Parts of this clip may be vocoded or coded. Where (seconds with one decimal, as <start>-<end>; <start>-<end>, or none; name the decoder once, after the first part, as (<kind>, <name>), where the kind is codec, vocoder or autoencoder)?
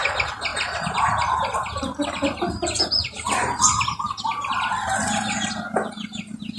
none